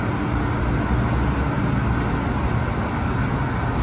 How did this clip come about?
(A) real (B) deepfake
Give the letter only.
A